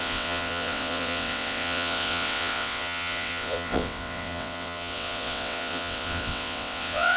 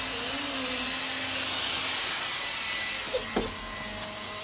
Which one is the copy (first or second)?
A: first